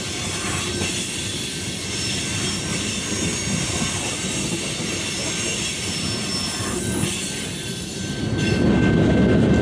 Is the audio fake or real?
real